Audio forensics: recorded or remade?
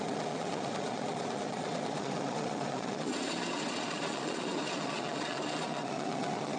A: remade